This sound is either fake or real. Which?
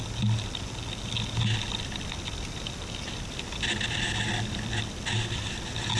real